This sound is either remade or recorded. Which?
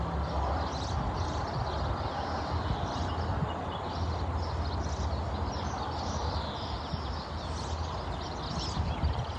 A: recorded